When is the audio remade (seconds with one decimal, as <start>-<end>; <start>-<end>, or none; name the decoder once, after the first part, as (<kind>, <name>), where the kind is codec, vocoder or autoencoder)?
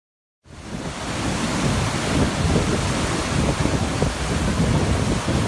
none